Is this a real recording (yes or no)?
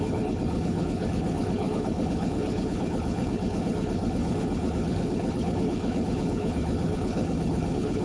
no